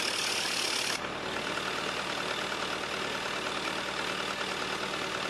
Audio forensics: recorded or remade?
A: recorded